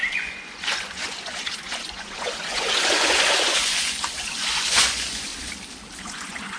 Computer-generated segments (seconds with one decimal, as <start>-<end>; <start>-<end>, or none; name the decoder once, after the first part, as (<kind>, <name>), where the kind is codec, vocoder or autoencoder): 0.0-5.3 (vocoder, Vocos); 6.0-6.6